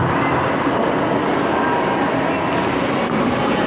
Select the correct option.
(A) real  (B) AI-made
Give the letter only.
A